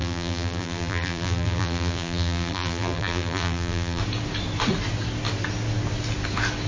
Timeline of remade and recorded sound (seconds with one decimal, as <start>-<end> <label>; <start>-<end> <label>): 0.0-4.0 remade; 4.0-6.7 recorded